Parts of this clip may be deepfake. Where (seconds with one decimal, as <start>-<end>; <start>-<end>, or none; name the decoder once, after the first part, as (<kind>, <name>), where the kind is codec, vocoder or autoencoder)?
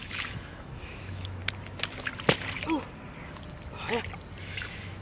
0.0-1.4 (autoencoder, DAC-VAE); 4.4-5.0